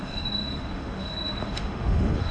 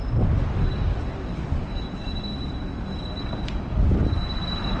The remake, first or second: first